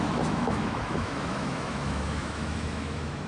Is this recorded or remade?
remade